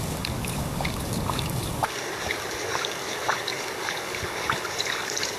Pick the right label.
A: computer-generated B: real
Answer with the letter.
A